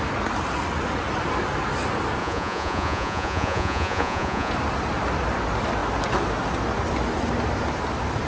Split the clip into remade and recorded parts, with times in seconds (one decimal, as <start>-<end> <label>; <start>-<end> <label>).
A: 0.0-2.2 recorded; 2.2-4.5 remade; 4.5-8.3 recorded